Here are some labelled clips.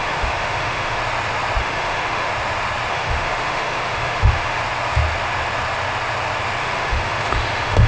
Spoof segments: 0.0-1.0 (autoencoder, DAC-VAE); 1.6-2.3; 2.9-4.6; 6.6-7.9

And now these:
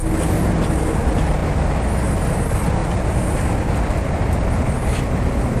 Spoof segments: none

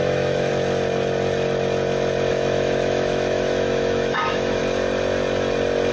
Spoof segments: 0.0-0.5 (autoencoder, DAC-VAE); 2.3-4.6